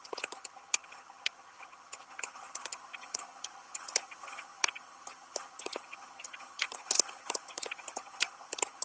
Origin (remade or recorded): remade